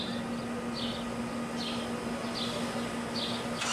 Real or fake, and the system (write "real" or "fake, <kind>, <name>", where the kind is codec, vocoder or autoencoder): real